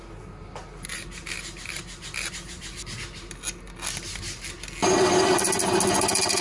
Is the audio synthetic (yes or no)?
no